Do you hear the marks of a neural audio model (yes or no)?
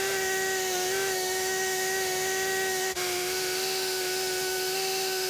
yes